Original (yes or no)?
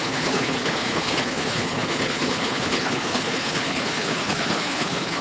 no